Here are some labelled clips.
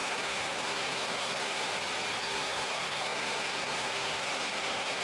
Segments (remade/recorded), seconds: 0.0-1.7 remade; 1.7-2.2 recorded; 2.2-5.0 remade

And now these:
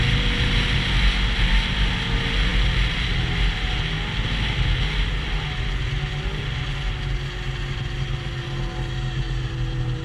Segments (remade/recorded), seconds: 0.0-10.0 recorded

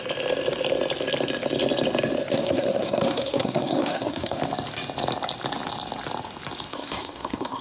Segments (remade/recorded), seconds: 0.0-2.3 recorded; 2.3-4.4 remade; 4.4-6.7 recorded; 6.7-7.6 remade